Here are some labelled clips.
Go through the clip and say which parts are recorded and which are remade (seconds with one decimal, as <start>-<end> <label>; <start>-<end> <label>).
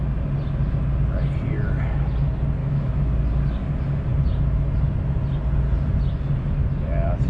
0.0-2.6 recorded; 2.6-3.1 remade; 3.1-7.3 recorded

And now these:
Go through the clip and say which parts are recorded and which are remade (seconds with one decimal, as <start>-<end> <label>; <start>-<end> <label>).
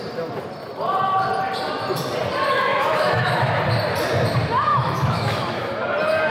0.0-2.7 recorded; 2.7-3.6 remade; 3.6-4.7 recorded; 4.7-5.7 remade; 5.7-6.3 recorded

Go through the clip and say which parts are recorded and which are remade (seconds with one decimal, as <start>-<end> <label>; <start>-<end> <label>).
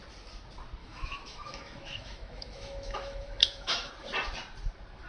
0.0-0.8 recorded; 0.8-3.9 remade; 3.9-5.1 recorded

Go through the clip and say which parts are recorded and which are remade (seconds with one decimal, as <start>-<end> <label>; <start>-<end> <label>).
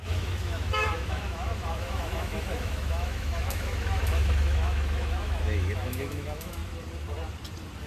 0.0-6.6 remade; 6.6-7.9 recorded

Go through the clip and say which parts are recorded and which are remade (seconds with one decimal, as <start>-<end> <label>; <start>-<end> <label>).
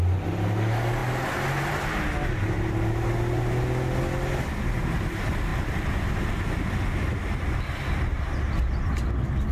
0.0-9.5 recorded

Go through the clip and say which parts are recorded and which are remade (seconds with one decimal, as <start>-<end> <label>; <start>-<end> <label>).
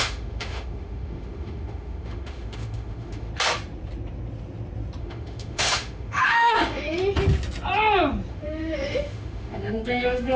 0.0-3.3 remade; 3.3-5.0 recorded; 5.0-7.0 remade; 7.0-8.3 recorded; 8.3-10.4 remade